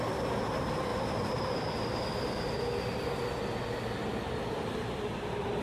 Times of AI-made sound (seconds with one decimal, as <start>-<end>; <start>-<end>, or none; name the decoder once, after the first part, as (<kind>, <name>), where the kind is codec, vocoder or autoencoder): 0.9-2.5 (vocoder, BigVGAN v2)